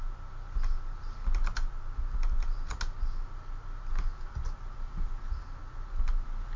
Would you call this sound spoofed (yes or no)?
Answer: no